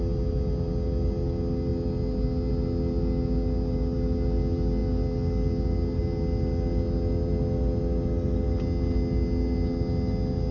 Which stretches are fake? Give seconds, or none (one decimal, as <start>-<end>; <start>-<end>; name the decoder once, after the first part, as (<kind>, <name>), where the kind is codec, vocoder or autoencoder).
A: none